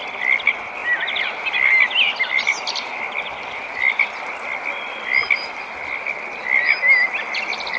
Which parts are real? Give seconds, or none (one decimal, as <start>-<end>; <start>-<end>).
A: 0.0-7.8